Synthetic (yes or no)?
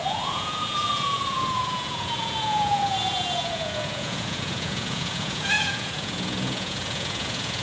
yes